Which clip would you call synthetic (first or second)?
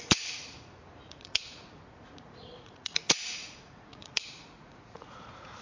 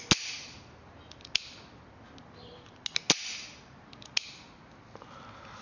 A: first